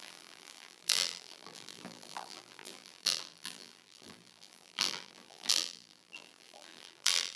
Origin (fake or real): fake